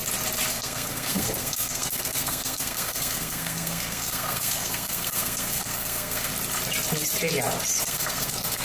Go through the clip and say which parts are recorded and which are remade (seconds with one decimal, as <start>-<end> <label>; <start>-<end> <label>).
0.0-0.5 recorded; 0.5-6.3 remade; 6.3-7.8 recorded; 7.8-8.6 remade